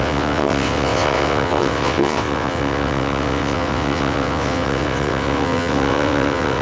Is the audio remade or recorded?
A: remade